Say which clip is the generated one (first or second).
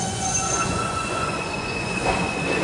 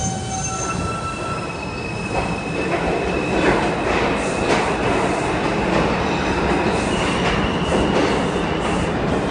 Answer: first